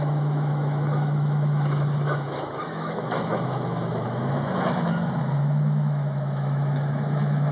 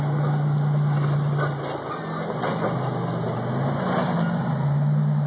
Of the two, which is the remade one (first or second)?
first